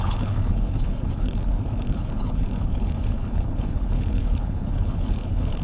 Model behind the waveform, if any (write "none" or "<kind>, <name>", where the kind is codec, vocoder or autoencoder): codec, HILCodec